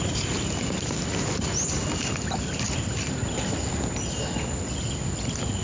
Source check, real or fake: real